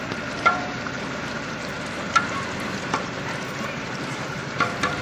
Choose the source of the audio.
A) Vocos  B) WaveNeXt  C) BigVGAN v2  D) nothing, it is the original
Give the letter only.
C